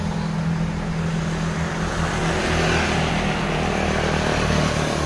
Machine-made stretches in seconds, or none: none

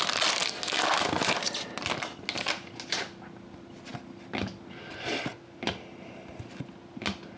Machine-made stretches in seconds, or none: none